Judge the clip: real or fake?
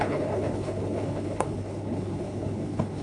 fake